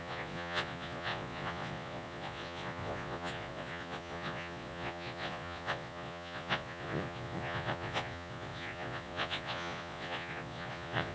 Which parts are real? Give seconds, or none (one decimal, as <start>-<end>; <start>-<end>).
none